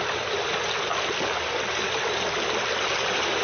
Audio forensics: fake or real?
real